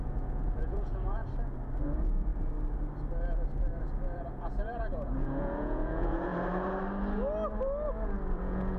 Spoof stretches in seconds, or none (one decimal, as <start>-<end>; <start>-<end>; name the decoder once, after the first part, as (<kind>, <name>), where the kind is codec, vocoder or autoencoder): 0.0-1.2 (vocoder, Vocos); 1.8-2.3; 3.8-6.3; 8.4-8.8